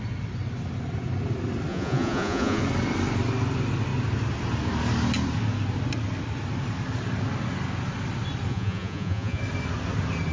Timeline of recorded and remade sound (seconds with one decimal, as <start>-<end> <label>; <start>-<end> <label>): 0.0-1.7 recorded; 1.7-2.6 remade; 2.6-8.5 recorded; 8.5-9.4 remade; 9.4-10.3 recorded